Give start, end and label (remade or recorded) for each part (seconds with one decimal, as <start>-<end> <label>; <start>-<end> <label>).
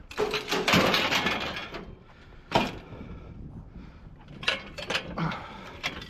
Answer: 0.0-6.1 recorded